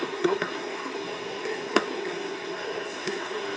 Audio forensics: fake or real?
fake